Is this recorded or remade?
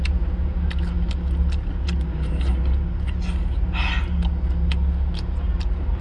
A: recorded